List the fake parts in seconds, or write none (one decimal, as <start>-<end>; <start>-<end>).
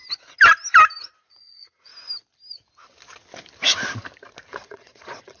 1.2-1.9; 4.5-5.4